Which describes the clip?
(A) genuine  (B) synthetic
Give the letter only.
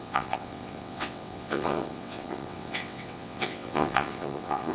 B